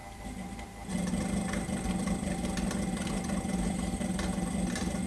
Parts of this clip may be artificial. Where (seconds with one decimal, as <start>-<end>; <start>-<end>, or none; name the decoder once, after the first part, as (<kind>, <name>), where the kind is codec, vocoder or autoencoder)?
none

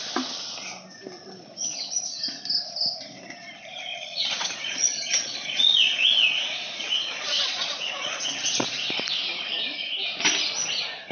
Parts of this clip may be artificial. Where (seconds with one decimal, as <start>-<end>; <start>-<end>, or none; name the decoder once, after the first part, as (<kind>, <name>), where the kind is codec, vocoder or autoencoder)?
3.9-8.3 (vocoder, Vocos)

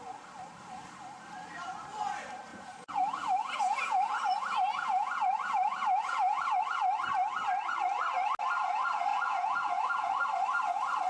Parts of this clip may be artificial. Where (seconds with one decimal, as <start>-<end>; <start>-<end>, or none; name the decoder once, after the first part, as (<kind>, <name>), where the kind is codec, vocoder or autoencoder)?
2.5-6.6 (vocoder, Vocos); 9.1-10.1

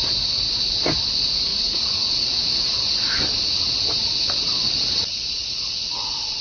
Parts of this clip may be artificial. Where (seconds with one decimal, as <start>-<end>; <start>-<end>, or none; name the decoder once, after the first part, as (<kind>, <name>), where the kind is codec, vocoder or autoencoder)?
1.5-3.2 (vocoder, Vocos); 5.4-6.4

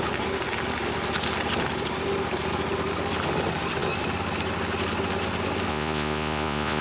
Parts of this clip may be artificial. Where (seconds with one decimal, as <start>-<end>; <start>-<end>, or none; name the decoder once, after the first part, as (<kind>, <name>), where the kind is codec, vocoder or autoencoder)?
5.7-6.8 (vocoder, Vocos)

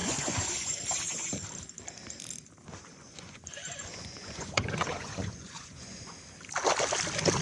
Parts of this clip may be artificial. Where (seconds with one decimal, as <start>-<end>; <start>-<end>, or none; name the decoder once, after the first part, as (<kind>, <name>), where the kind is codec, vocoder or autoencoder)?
0.0-0.8 (vocoder, Vocos); 2.9-6.1